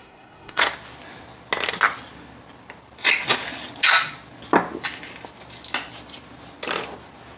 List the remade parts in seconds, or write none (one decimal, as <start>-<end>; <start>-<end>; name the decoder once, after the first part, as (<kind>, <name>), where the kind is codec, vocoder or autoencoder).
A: 0.0-0.6 (codec, SNAC)

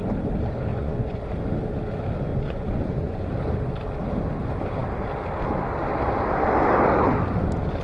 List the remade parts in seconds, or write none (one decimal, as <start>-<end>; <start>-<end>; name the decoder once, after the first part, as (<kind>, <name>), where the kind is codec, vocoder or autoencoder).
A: 0.7-1.2 (vocoder, Vocos); 2.3-3.3

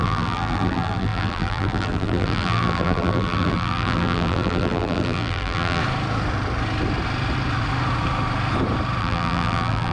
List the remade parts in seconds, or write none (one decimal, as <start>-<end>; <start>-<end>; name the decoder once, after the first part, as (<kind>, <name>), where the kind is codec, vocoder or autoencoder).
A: 0.0-5.8 (vocoder, BigVGAN v2); 9.0-9.9

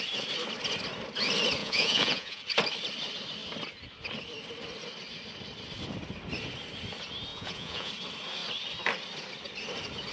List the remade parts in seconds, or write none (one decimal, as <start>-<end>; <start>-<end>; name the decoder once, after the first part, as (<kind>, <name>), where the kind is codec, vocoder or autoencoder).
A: 1.6-2.4 (vocoder, Vocos); 7.3-7.9

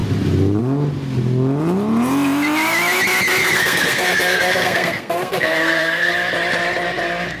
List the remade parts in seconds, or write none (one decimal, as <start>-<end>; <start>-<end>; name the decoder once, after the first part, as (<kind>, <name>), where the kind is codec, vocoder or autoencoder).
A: 3.4-6.1 (codec, SNAC)

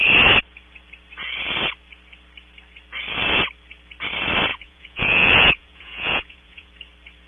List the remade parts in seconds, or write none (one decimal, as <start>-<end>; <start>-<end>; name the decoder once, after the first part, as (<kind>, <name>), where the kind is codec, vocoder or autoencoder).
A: 4.5-6.7 (vocoder, Vocos)

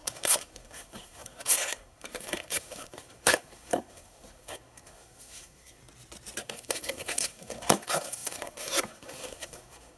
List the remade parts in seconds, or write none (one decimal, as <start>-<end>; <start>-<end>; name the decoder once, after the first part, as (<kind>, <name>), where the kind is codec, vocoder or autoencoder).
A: 0.0-5.8 (codec, SNAC); 6.4-10.0

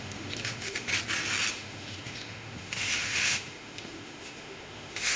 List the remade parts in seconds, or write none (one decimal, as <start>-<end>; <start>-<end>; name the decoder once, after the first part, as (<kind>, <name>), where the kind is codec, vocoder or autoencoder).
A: 0.0-0.9 (autoencoder, DAC-VAE); 1.5-5.2